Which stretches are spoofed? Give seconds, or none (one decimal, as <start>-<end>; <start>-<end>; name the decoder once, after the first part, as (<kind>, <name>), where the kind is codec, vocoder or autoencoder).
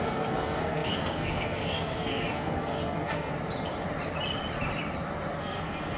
0.0-3.3 (codec, SNAC); 5.4-6.0